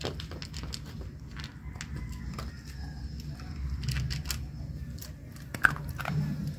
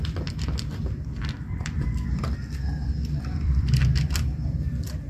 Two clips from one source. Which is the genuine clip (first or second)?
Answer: first